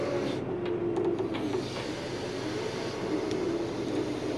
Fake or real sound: real